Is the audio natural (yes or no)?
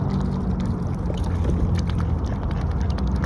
yes